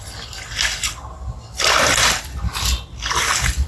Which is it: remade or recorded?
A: recorded